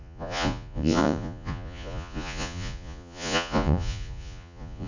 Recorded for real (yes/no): no